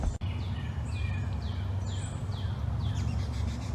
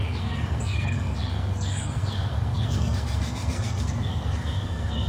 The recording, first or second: first